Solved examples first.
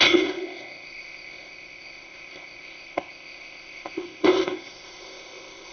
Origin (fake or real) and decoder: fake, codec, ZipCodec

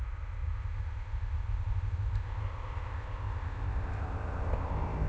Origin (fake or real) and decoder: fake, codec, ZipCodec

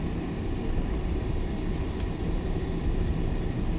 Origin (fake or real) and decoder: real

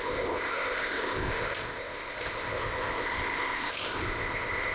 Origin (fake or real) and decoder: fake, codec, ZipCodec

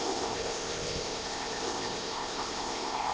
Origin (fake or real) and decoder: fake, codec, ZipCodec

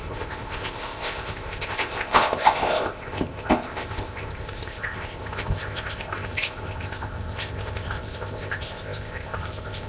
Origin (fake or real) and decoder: fake, codec, ZipCodec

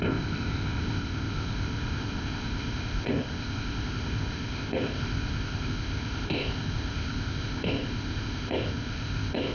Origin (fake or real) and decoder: fake, codec, ZipCodec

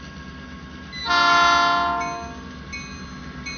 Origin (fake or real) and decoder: real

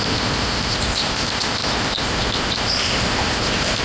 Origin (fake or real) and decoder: fake, codec, ZipCodec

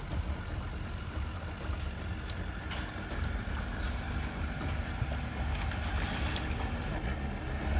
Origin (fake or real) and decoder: real